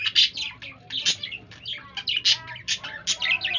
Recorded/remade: recorded